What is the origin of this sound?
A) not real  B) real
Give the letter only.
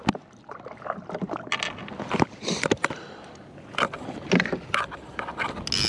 B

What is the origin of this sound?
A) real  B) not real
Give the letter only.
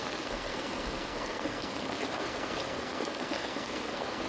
B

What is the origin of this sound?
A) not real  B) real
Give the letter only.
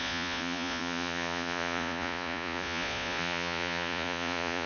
A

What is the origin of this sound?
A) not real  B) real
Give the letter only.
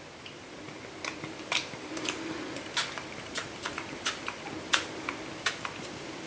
B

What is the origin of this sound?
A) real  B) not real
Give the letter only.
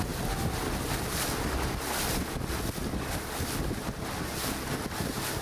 A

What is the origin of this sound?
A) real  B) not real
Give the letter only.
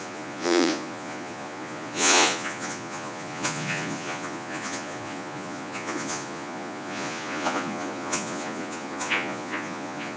B